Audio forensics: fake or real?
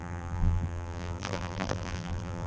fake